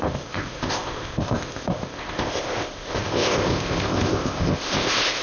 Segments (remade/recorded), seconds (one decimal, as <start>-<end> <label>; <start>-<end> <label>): 0.0-5.2 remade